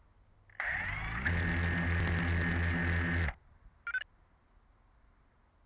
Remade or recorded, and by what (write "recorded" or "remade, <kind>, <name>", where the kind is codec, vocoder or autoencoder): recorded